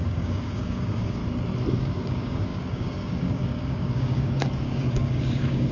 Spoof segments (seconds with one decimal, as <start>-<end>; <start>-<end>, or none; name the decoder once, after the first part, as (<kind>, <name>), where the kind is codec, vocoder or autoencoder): 0.0-1.2 (codec, DAC); 1.8-5.7